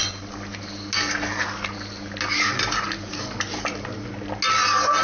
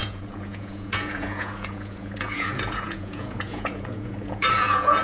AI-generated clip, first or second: second